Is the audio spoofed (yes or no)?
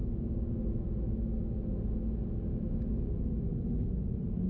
no